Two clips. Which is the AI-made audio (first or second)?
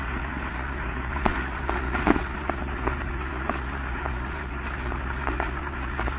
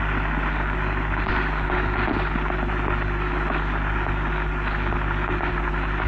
first